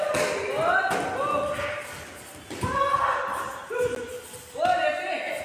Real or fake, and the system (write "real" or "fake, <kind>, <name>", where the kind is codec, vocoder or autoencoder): real